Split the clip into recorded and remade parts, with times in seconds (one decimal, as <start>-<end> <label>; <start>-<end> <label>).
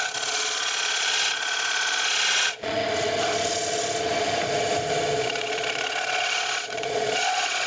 0.0-2.8 remade; 2.8-5.2 recorded; 5.2-7.7 remade